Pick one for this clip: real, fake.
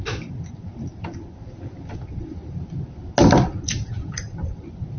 real